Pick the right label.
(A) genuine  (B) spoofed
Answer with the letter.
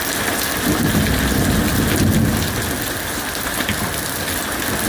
A